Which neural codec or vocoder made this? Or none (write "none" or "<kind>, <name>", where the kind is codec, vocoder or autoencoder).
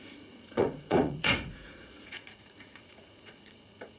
vocoder, Vocos